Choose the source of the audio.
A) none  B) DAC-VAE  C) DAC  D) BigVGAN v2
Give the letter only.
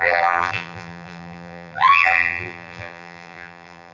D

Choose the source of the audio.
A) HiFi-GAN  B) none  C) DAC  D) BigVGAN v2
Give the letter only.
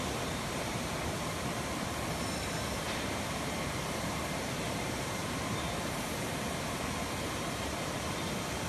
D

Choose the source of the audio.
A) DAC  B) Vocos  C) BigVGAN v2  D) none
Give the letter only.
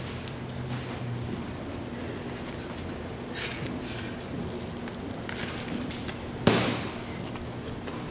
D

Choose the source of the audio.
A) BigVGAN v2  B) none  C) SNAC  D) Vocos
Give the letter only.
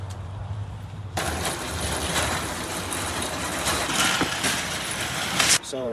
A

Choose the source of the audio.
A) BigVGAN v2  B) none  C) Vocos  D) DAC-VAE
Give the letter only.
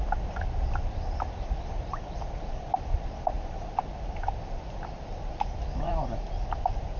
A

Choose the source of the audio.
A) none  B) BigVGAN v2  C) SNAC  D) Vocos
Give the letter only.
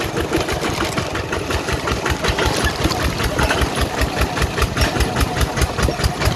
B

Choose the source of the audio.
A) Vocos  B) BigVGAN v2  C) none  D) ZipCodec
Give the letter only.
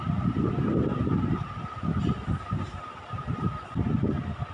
C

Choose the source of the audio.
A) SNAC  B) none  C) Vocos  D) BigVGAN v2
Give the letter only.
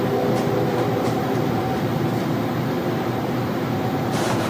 D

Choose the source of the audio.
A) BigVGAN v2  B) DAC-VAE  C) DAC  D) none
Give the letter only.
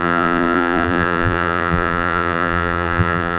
A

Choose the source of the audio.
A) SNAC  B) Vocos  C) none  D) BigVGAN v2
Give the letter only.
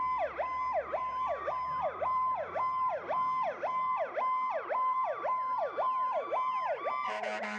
D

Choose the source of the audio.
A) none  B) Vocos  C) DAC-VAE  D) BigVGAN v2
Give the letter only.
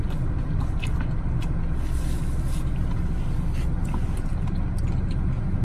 A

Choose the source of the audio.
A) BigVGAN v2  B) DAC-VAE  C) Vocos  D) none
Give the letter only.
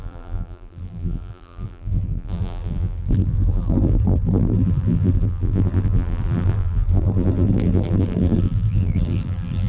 A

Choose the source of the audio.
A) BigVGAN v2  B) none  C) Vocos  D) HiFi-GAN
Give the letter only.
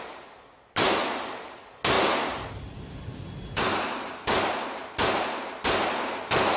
B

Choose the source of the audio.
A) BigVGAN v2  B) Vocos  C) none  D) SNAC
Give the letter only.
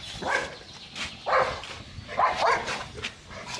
C